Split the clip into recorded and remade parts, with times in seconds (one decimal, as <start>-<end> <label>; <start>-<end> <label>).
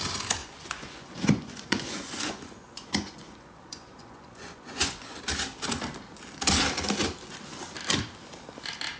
0.0-0.4 recorded; 0.4-5.2 remade; 5.2-9.0 recorded